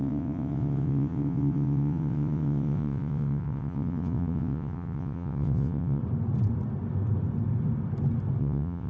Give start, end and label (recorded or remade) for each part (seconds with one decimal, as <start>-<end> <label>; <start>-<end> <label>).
0.0-6.0 remade; 6.0-8.4 recorded; 8.4-8.9 remade

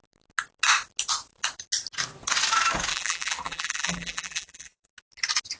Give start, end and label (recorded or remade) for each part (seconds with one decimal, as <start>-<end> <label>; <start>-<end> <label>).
0.0-2.9 recorded; 2.9-4.9 remade; 4.9-5.6 recorded

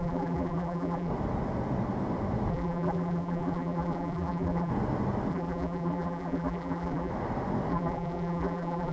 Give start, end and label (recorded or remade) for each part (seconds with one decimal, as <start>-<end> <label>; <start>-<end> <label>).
0.0-1.1 remade; 1.1-2.5 recorded; 2.5-4.7 remade; 4.7-5.3 recorded; 5.3-7.1 remade; 7.1-7.7 recorded; 7.7-8.9 remade

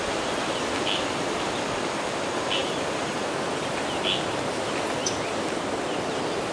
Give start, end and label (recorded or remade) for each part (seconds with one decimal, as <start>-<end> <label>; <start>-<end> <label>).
0.0-6.5 recorded